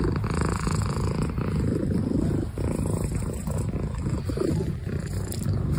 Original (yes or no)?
yes